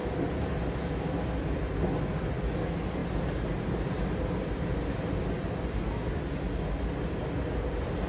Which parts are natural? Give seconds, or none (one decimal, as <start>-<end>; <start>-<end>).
0.0-8.1